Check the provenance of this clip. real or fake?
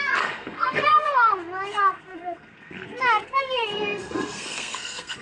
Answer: fake